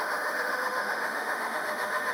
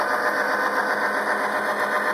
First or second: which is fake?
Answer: first